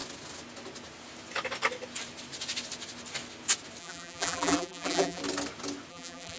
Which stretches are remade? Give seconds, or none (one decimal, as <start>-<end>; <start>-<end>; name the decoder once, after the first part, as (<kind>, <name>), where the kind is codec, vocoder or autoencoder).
3.8-5.2 (vocoder, BigVGAN v2); 5.9-6.4